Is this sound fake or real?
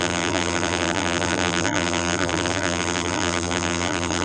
fake